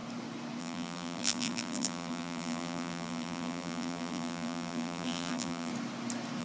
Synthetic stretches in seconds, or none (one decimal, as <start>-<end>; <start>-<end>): 0.6-5.7